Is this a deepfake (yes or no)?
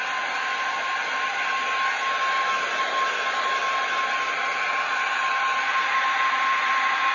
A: no